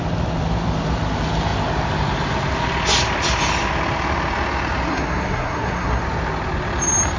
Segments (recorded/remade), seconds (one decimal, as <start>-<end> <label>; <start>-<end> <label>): 0.0-4.9 recorded; 4.9-6.0 remade; 6.0-7.2 recorded